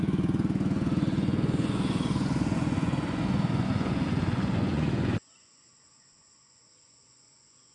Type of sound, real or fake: fake